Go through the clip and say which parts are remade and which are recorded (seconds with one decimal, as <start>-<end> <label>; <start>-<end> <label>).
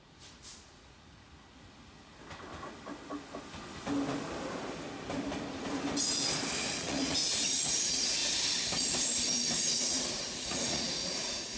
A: 0.0-1.3 remade; 1.3-6.5 recorded; 6.5-8.2 remade; 8.2-9.7 recorded; 9.7-11.6 remade